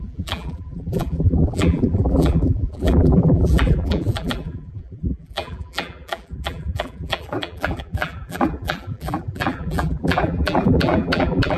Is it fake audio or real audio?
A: fake